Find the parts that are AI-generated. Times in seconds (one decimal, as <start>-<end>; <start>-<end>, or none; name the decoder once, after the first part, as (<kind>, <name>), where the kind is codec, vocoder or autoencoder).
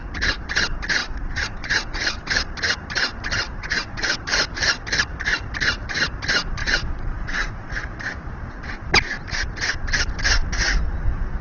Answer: 1.0-2.3 (vocoder, WaveNeXt); 3.6-4.2; 6.6-7.7